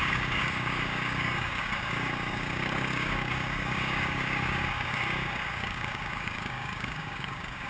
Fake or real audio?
fake